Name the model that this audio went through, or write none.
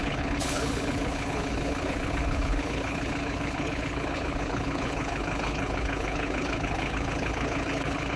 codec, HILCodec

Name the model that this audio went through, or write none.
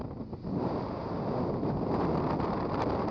none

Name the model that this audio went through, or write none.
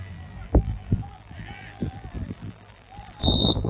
vocoder, BigVGAN v2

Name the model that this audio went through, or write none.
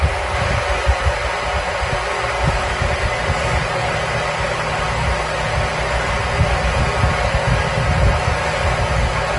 none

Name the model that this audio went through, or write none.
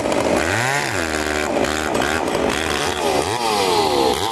none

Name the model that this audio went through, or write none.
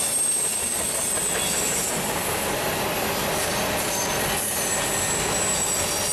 none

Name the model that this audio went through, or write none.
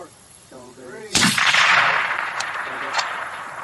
vocoder, Vocos